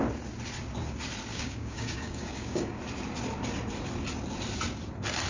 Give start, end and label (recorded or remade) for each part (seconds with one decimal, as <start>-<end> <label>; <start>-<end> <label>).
0.0-1.3 recorded; 1.3-2.8 remade; 2.8-5.3 recorded